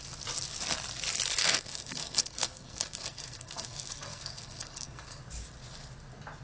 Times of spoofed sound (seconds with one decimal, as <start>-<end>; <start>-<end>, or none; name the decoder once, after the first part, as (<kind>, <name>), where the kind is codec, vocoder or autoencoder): 1.4-5.2 (codec, SNAC)